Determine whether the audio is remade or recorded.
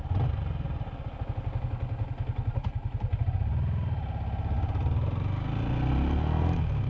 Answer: recorded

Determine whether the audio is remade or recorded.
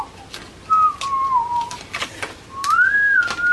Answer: recorded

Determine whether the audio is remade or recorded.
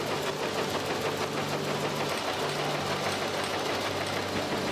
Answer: recorded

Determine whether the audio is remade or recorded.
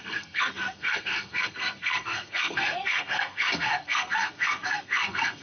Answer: remade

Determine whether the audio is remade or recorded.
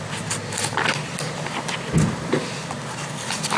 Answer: recorded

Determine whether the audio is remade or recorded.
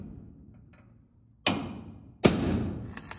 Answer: recorded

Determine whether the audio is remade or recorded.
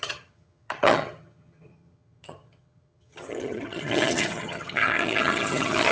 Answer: remade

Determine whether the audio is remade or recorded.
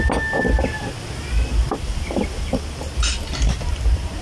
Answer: recorded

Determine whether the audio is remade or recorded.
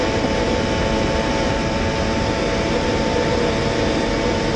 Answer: recorded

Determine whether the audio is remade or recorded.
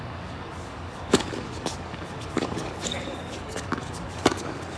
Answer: remade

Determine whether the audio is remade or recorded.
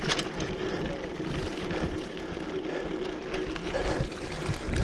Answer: recorded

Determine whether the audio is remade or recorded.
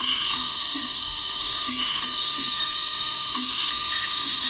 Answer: remade